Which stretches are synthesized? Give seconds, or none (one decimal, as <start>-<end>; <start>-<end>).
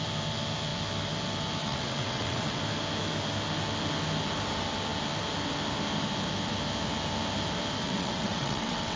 1.6-2.6; 7.8-9.0